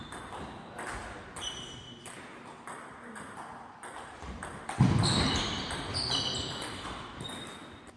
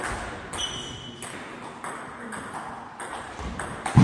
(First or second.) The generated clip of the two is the first